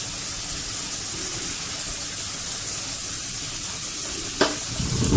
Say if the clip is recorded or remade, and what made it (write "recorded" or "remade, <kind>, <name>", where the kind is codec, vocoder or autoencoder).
recorded